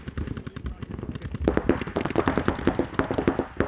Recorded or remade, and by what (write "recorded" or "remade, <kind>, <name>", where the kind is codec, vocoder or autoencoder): recorded